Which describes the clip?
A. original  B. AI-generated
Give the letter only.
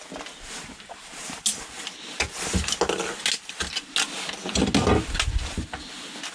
A